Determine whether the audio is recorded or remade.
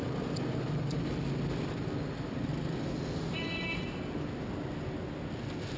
recorded